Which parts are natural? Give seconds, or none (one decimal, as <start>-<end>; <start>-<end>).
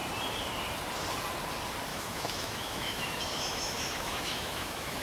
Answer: 0.0-1.9